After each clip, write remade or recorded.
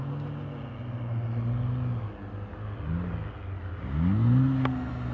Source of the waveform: recorded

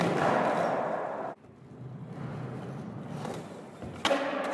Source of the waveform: recorded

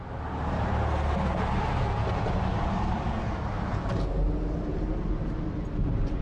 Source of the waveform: recorded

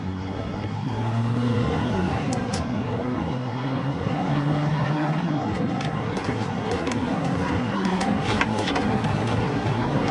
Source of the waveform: remade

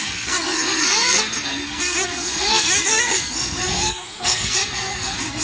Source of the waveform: remade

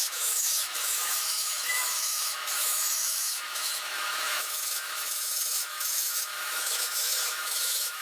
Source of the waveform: remade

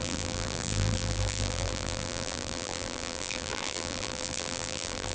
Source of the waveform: remade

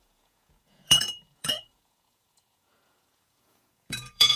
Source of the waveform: remade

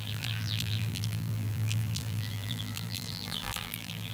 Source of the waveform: remade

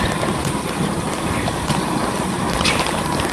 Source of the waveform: remade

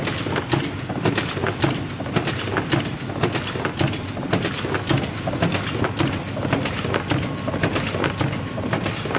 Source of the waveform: recorded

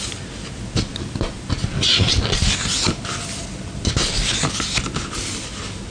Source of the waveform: recorded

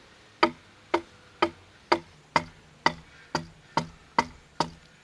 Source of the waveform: recorded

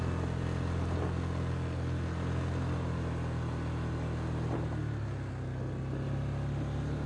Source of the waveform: recorded